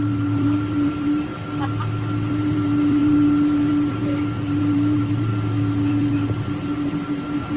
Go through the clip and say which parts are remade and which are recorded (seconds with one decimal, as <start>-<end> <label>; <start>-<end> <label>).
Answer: 0.0-1.3 remade; 1.3-2.3 recorded; 2.3-5.3 remade; 5.3-5.9 recorded; 5.9-7.6 remade